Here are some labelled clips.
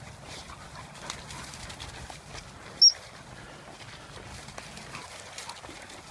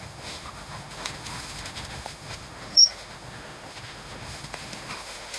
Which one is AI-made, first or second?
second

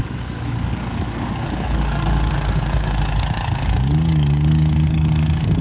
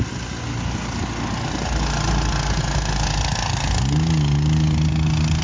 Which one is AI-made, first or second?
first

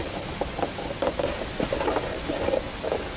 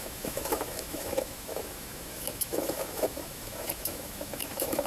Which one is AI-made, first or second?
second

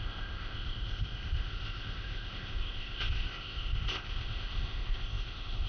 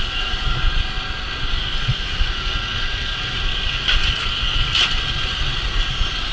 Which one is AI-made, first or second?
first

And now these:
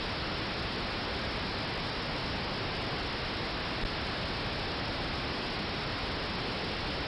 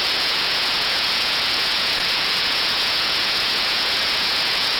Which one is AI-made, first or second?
second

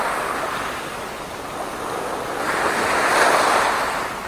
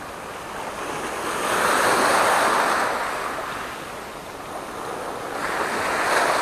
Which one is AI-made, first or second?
first